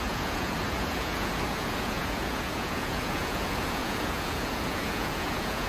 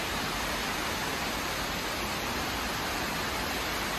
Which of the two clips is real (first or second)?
second